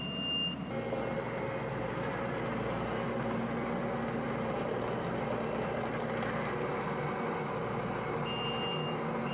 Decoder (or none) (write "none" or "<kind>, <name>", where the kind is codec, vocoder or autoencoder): none